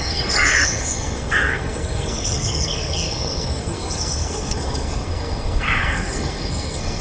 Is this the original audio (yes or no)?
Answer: no